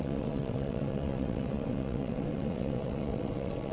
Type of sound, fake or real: fake